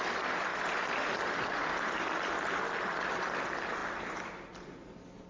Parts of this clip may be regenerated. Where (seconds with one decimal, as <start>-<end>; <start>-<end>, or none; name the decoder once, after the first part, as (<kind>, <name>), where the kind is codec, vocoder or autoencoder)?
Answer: none